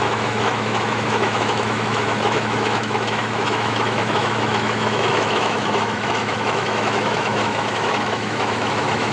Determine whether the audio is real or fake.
fake